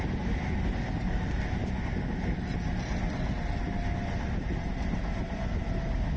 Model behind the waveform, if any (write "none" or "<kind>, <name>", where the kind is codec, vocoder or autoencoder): none